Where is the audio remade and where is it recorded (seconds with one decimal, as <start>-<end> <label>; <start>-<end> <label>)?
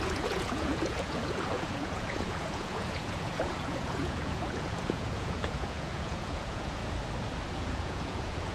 0.0-6.8 remade; 6.8-7.5 recorded; 7.5-8.5 remade